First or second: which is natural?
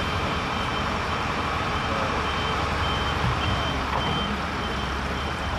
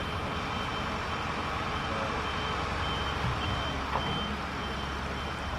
second